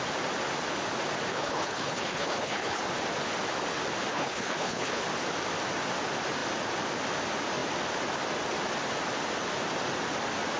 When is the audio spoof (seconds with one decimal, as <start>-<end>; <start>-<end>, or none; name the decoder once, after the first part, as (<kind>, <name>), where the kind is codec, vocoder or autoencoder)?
1.3-2.8 (codec, HILCodec); 4.1-5.0